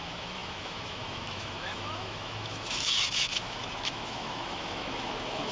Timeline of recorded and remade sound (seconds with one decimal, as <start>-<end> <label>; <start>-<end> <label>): 0.0-5.5 remade